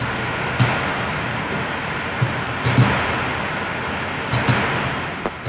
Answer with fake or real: real